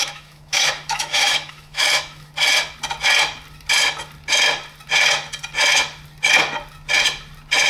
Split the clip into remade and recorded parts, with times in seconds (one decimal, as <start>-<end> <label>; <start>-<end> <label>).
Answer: 0.0-2.3 remade; 2.3-7.7 recorded